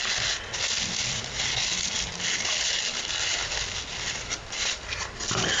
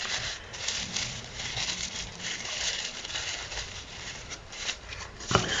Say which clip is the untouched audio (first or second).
first